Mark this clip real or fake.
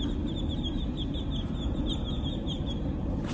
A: real